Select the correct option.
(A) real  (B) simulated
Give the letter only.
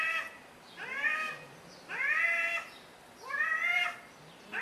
A